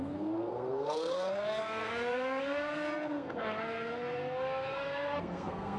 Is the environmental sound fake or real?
fake